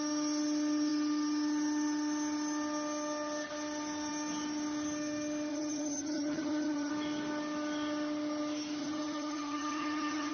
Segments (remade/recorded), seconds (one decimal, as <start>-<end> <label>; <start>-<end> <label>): 0.0-5.5 recorded; 5.5-6.9 remade; 6.9-8.8 recorded; 8.8-10.3 remade